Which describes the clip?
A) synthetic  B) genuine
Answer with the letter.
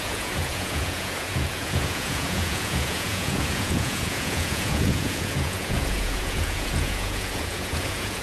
A